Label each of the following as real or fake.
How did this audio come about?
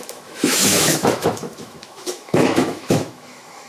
fake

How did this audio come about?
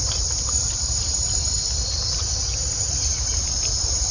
fake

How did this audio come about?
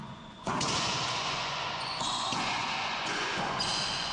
fake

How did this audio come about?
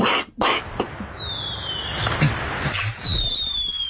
real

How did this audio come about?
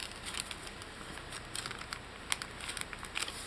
real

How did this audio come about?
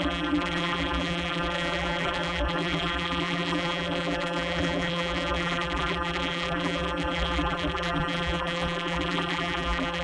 fake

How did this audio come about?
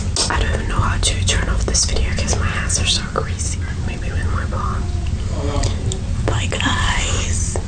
real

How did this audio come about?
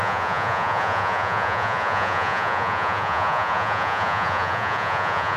fake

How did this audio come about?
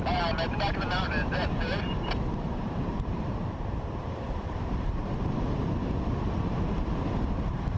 fake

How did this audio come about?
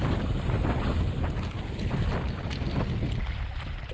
real